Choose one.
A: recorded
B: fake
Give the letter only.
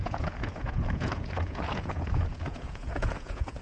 B